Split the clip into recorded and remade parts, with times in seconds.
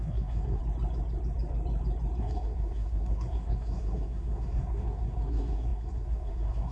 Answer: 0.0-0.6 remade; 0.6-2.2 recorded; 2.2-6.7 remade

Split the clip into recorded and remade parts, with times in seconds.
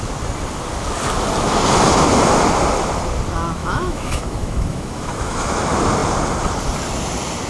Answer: 0.0-3.6 recorded; 3.6-5.6 remade; 5.6-7.5 recorded